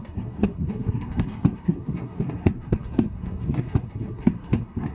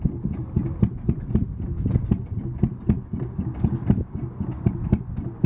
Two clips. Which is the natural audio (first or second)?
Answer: second